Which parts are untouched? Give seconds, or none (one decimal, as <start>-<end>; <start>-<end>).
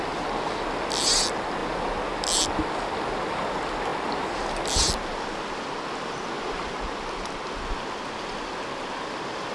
0.0-9.5